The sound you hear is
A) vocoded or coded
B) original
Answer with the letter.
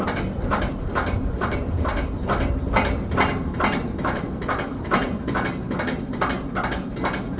A